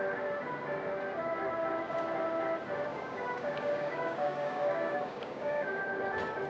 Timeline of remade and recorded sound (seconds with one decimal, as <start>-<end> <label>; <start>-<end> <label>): 0.0-2.9 recorded; 2.9-5.8 remade; 5.8-6.5 recorded